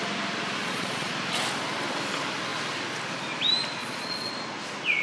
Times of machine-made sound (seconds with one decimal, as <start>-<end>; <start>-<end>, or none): 0.6-1.1; 3.8-4.3